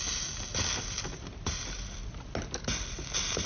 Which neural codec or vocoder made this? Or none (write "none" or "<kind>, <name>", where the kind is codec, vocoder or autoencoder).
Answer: none